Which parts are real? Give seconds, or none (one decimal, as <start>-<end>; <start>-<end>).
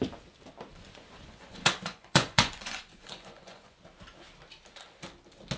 0.0-0.7; 3.8-5.6